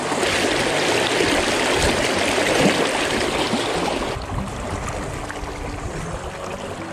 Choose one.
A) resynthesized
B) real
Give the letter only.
B